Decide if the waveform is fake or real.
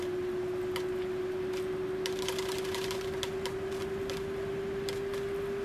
real